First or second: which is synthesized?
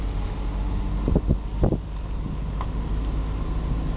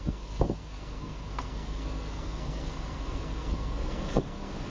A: second